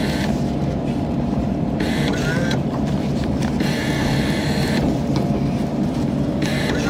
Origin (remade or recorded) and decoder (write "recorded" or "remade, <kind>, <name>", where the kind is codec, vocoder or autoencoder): remade, vocoder, BigVGAN v2